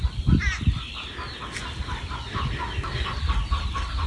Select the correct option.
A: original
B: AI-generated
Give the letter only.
A